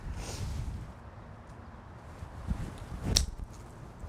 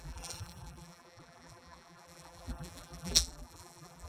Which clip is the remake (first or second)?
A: second